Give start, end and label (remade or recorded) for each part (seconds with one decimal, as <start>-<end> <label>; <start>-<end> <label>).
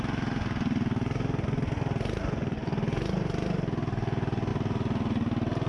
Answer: 0.0-5.7 recorded